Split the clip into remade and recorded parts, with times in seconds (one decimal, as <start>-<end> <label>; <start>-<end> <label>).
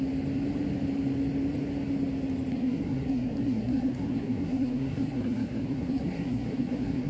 0.0-2.5 recorded; 2.5-7.1 remade